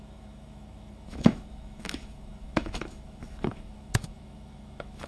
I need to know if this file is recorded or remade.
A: remade